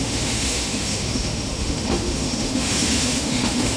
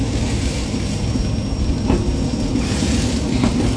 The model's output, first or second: first